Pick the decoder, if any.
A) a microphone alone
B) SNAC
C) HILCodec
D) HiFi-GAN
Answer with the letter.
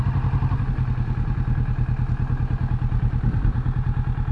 A